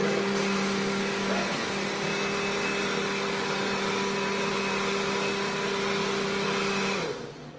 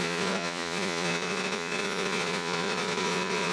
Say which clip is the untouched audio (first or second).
first